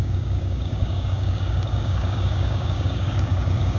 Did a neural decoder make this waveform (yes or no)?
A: yes